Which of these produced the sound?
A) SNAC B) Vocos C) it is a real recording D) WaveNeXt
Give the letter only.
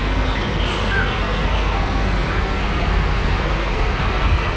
A